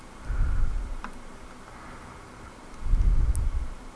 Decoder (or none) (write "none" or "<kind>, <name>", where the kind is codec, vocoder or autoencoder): none